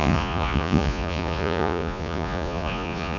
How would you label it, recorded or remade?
remade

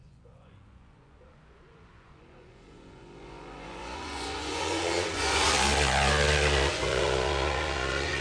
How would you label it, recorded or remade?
remade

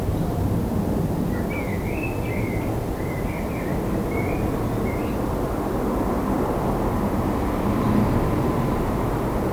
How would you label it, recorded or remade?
recorded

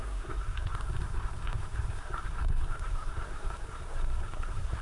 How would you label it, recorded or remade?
remade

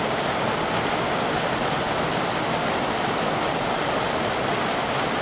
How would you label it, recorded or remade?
recorded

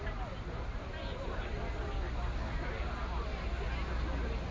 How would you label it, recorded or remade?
recorded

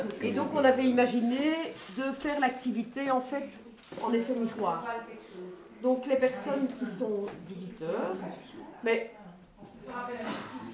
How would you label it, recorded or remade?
recorded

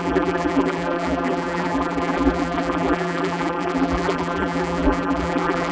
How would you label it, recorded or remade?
remade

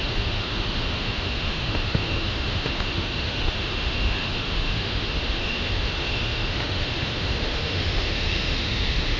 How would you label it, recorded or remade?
remade